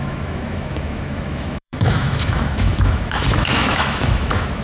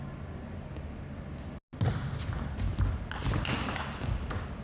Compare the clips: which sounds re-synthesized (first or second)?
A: first